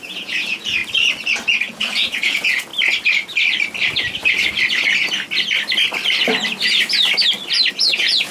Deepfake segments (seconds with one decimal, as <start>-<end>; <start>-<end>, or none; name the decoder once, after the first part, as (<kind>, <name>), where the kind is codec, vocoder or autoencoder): 0.0-0.8 (vocoder, Vocos); 1.7-2.7; 7.7-8.3